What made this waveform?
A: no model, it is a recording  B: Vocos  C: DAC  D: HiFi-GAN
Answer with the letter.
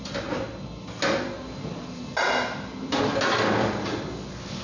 A